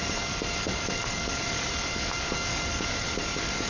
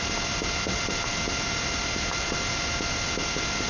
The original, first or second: second